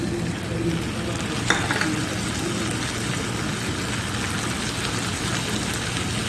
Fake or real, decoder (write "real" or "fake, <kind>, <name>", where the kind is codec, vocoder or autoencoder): real